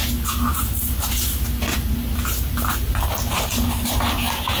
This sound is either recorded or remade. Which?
recorded